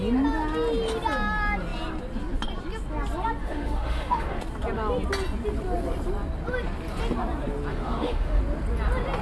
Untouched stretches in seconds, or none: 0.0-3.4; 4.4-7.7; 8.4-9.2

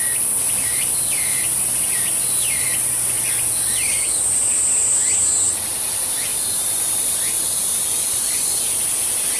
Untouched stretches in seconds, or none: 0.0-7.9; 8.6-9.4

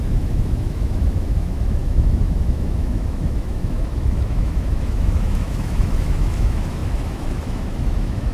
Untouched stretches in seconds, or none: none

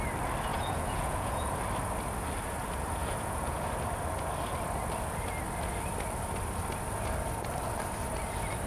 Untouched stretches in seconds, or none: 0.0-0.5; 1.5-3.0; 3.6-8.7

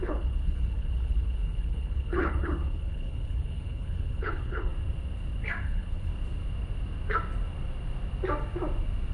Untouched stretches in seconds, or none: 4.7-5.6; 6.1-9.1